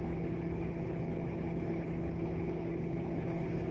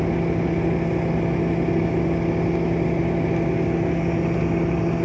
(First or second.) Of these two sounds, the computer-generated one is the first